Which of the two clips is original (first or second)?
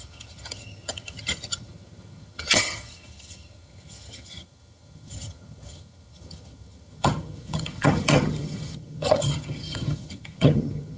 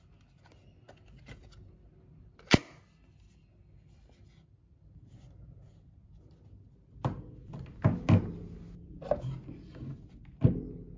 second